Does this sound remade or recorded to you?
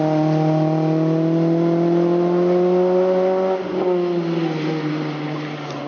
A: recorded